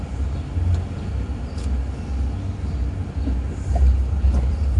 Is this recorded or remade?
recorded